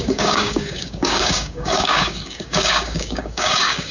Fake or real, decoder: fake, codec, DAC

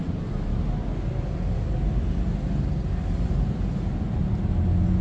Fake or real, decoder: real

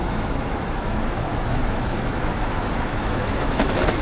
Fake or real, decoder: fake, autoencoder, DAC-VAE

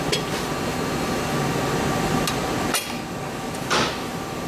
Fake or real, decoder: real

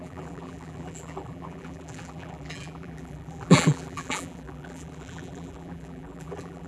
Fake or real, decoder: fake, vocoder, BigVGAN v2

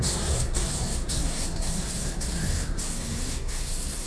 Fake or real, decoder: fake, codec, SNAC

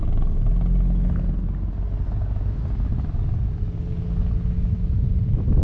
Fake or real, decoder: real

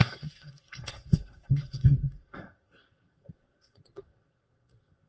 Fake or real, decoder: fake, codec, SNAC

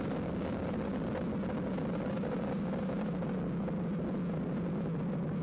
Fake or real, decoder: real